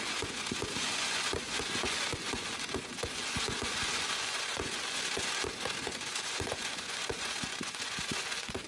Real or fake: fake